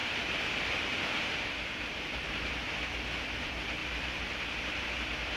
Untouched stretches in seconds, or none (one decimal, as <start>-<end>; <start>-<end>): 2.5-3.8; 4.6-5.4